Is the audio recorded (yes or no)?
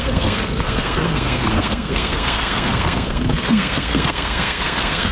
no